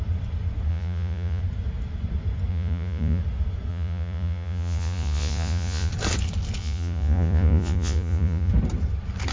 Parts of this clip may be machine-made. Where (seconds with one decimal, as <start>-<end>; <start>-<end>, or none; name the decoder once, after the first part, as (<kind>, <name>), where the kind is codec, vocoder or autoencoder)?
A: 0.7-1.4 (vocoder, Vocos); 2.5-3.2; 3.7-5.9; 6.6-8.5